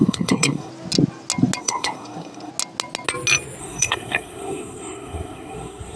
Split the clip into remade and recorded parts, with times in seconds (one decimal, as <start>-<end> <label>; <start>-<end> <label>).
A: 0.0-0.7 remade; 0.7-1.6 recorded; 1.6-2.5 remade; 2.5-3.6 recorded; 3.6-6.0 remade